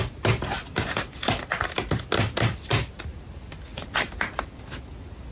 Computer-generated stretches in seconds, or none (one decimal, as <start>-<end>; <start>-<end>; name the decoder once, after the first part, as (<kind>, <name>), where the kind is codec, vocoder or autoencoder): 0.7-2.9 (vocoder, BigVGAN v2); 3.7-4.7